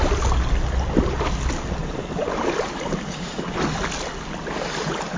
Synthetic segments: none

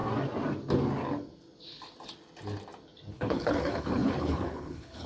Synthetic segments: 3.1-5.1

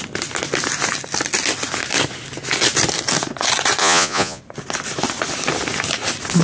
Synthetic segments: 3.8-4.4

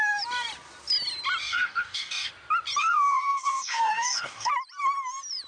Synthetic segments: 1.4-2.3; 2.8-4.5

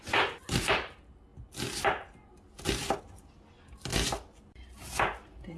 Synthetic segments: none

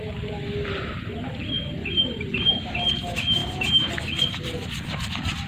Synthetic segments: 1.8-2.7; 3.4-4.0

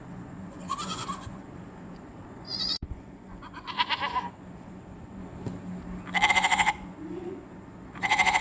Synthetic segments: 0.0-5.2; 6.3-8.4